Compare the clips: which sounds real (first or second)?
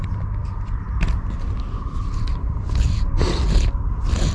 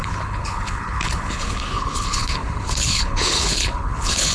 first